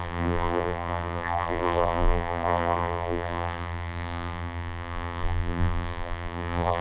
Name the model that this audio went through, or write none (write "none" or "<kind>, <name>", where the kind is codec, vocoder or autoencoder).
vocoder, BigVGAN v2